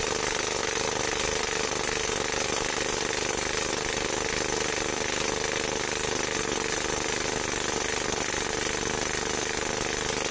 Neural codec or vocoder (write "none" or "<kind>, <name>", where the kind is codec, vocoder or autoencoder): none